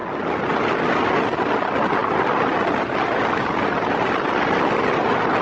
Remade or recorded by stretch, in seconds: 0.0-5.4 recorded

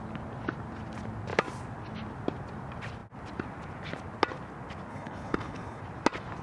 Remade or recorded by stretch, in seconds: 0.0-4.9 recorded; 4.9-5.8 remade; 5.8-6.4 recorded

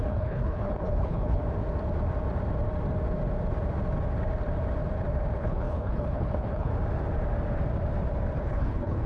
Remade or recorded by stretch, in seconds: 0.0-1.4 remade; 1.4-5.3 recorded; 5.3-6.7 remade; 6.7-8.4 recorded; 8.4-9.1 remade

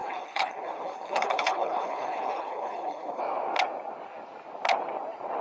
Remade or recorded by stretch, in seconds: 0.0-3.2 remade; 3.2-5.4 recorded